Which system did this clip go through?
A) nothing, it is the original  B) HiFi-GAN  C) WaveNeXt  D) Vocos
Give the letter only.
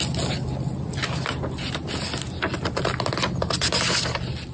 A